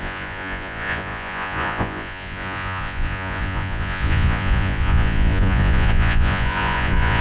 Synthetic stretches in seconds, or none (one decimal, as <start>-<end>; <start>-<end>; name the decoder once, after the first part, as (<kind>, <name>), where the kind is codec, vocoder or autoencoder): 0.0-7.2 (vocoder, Vocos)